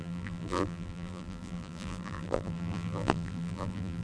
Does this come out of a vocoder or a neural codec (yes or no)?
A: yes